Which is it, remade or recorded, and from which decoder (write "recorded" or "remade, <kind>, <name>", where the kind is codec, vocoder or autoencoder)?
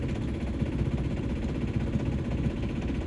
recorded